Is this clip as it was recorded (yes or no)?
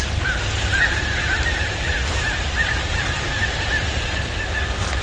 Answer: yes